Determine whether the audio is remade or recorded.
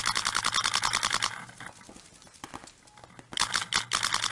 recorded